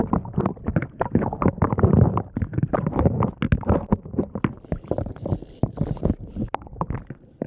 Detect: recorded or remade recorded